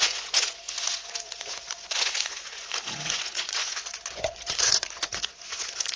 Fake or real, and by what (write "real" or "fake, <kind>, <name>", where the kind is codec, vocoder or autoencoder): fake, vocoder, Vocos